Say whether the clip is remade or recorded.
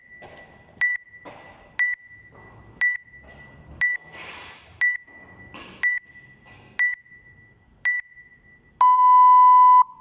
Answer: recorded